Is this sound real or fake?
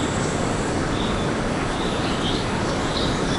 fake